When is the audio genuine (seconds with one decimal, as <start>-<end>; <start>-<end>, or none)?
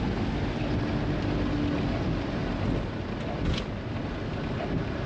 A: 0.0-5.1